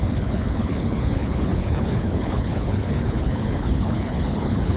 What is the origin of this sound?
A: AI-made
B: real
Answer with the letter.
A